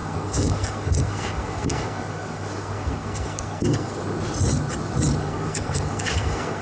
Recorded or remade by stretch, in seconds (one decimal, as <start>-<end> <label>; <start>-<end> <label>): 0.0-4.0 remade; 4.0-5.2 recorded; 5.2-6.6 remade